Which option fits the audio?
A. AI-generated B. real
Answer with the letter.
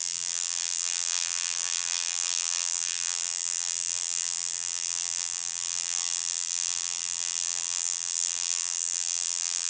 A